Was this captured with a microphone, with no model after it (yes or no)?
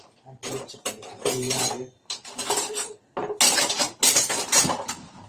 no